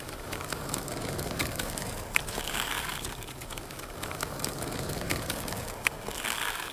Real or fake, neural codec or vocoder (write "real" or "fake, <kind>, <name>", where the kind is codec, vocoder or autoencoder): fake, codec, DAC